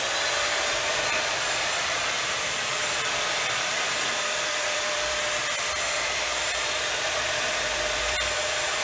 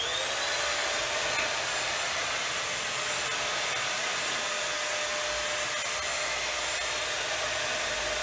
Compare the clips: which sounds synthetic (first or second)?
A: first